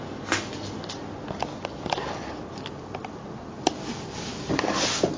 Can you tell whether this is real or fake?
real